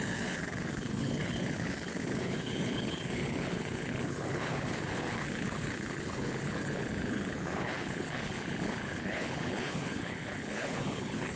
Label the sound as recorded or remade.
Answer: remade